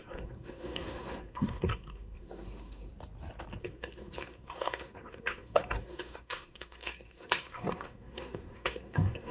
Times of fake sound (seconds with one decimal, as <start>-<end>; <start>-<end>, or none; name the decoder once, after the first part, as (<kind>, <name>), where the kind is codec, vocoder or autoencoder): 0.0-2.9 (codec, SNAC); 3.6-9.3